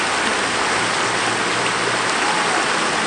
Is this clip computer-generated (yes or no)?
no